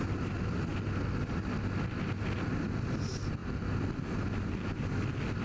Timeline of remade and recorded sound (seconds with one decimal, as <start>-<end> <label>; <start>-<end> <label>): 0.0-5.4 recorded